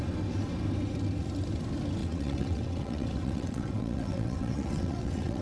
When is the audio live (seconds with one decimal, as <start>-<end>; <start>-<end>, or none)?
0.0-2.0